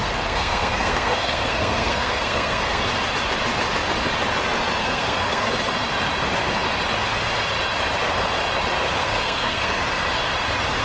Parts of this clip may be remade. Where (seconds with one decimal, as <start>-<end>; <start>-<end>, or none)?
0.0-2.8; 4.8-5.5; 9.0-9.8

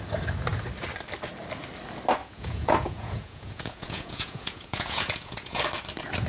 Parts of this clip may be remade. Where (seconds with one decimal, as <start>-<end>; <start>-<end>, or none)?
2.2-5.6